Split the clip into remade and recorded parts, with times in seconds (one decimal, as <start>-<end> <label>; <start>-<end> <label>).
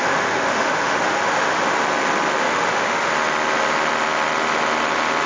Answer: 0.0-1.8 remade; 1.8-2.4 recorded; 2.4-3.1 remade; 3.1-5.3 recorded